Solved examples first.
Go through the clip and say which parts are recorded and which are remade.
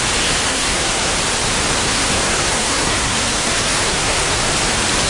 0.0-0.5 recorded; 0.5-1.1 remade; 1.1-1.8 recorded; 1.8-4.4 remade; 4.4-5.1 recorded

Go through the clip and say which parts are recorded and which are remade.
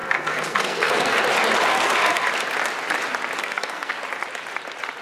0.0-1.2 remade; 1.2-1.7 recorded; 1.7-2.3 remade; 2.3-3.4 recorded; 3.4-3.9 remade; 3.9-5.0 recorded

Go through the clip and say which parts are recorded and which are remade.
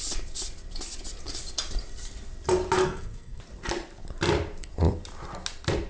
0.0-2.8 recorded; 2.8-3.4 remade; 3.4-5.9 recorded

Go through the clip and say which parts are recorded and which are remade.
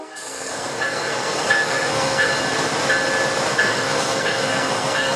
0.0-2.3 remade; 2.3-3.6 recorded; 3.6-5.2 remade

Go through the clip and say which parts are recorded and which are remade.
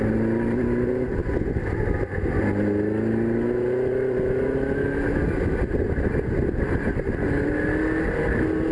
0.0-8.7 recorded